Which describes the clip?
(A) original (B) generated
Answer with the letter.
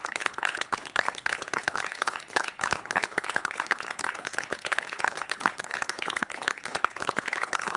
B